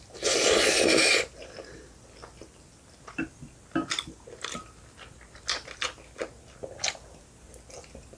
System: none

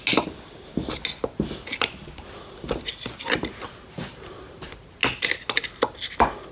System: none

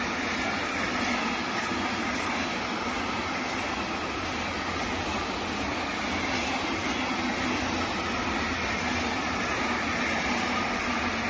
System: none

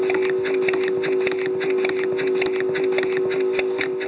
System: none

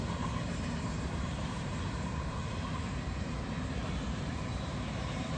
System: vocoder, BigVGAN v2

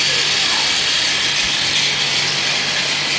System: none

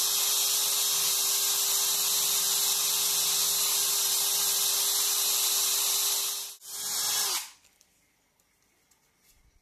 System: none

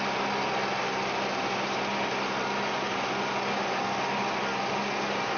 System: none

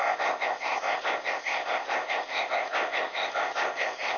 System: codec, ZipCodec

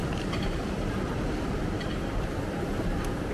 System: vocoder, BigVGAN v2